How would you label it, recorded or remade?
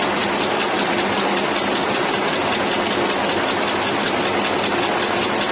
recorded